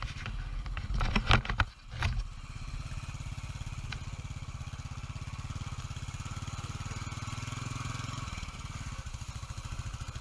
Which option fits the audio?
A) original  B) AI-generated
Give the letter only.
A